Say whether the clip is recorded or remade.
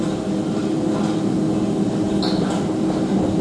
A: recorded